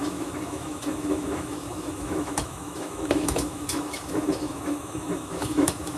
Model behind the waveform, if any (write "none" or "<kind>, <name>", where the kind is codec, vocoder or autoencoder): autoencoder, DAC-VAE